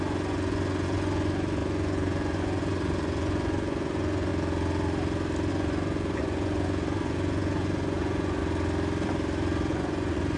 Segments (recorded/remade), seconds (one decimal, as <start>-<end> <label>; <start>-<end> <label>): 0.0-4.3 remade; 4.3-5.5 recorded; 5.5-8.4 remade; 8.4-9.7 recorded; 9.7-10.4 remade